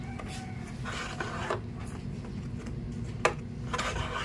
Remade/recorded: recorded